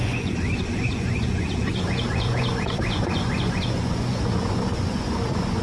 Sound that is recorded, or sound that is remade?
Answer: remade